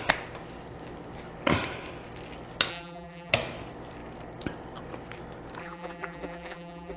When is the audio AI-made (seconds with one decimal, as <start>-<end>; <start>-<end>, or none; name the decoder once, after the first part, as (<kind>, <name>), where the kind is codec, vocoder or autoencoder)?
2.7-3.3 (vocoder, BigVGAN v2); 5.6-7.0